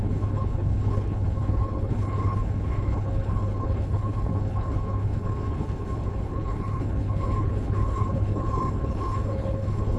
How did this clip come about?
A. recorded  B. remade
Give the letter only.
B